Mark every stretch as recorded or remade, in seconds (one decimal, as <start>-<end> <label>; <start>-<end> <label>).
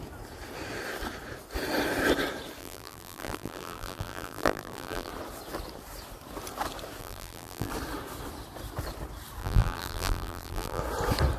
0.0-2.6 recorded; 2.6-5.1 remade; 5.1-7.0 recorded; 7.0-7.7 remade; 7.7-9.4 recorded; 9.4-10.8 remade; 10.8-11.4 recorded